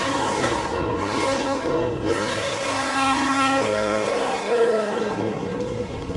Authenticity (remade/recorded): remade